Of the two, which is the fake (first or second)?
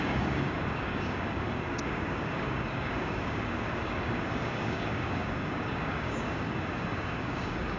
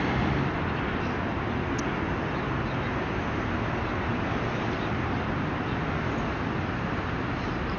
first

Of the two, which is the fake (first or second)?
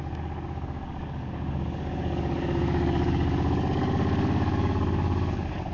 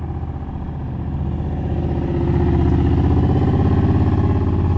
first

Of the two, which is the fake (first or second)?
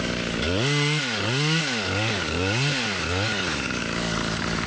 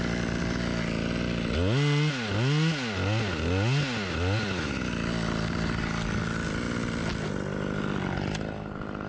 first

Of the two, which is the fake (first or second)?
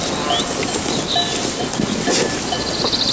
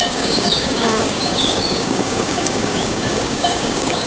second